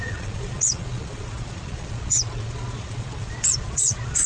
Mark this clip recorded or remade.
remade